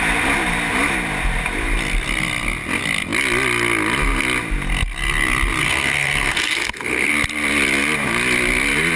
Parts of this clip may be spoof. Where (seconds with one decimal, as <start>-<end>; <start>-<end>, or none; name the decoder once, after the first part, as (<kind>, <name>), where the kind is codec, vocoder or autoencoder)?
5.6-7.1 (codec, SNAC)